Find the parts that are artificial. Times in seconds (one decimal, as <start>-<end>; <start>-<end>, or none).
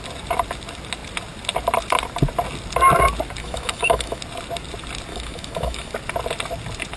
3.4-4.2; 5.1-5.9